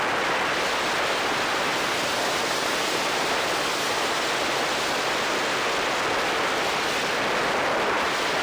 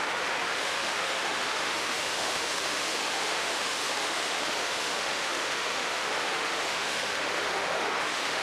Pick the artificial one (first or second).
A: second